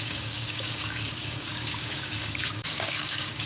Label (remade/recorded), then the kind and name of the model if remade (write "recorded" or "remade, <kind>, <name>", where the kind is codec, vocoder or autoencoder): remade, codec, DAC